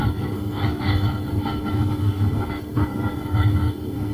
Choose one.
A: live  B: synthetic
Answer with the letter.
B